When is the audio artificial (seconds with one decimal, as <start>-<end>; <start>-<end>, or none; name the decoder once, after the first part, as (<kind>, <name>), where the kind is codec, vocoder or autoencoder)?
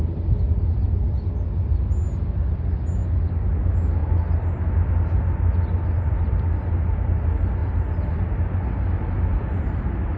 none